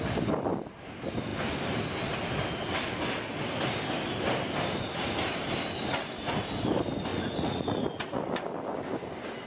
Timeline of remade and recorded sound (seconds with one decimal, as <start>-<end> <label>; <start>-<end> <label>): 0.0-7.1 recorded; 7.1-8.2 remade; 8.2-9.5 recorded

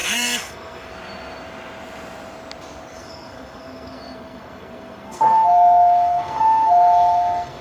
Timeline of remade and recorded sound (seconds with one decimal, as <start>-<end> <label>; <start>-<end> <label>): 0.0-0.9 remade; 0.9-2.9 recorded; 2.9-7.6 remade

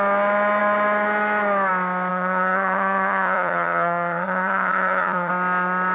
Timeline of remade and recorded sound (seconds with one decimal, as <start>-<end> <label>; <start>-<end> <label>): 0.0-2.1 recorded; 2.1-5.3 remade; 5.3-5.9 recorded

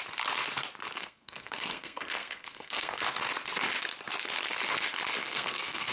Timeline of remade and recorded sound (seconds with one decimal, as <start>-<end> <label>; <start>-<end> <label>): 0.0-1.0 recorded; 1.0-3.0 remade; 3.0-5.2 recorded; 5.2-5.9 remade

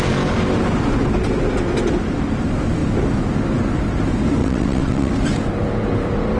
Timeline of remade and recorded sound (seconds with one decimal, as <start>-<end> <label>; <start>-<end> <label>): 0.0-4.4 recorded; 4.4-5.1 remade; 5.1-6.4 recorded

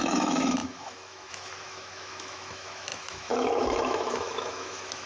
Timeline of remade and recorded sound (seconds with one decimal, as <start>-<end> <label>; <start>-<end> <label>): 0.0-5.1 remade

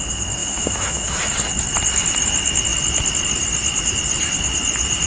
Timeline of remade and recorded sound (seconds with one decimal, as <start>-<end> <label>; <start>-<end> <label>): 0.0-0.4 recorded; 0.4-1.2 remade; 1.2-5.1 recorded

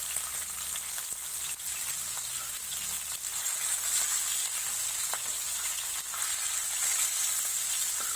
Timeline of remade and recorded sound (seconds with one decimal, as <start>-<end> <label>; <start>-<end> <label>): 0.0-4.6 recorded; 4.6-5.7 remade; 5.7-8.2 recorded